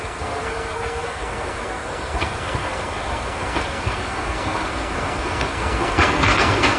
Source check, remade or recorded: remade